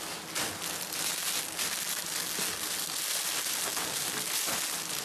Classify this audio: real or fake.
real